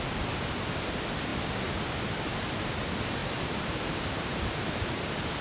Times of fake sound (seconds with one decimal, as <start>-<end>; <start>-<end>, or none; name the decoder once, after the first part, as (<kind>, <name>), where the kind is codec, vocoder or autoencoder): 3.2-4.8 (vocoder, BigVGAN v2)